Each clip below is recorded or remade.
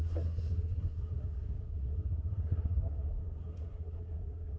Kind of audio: remade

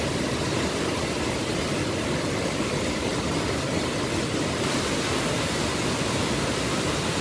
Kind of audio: recorded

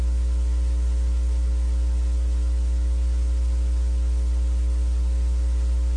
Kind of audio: recorded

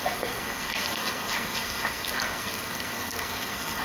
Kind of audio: remade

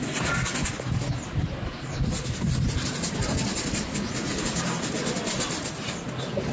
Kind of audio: recorded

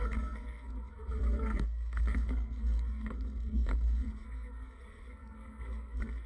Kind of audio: remade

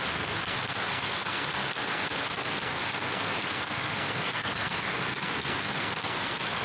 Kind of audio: remade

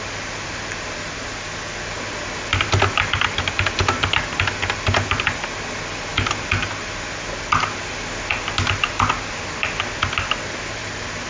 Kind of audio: recorded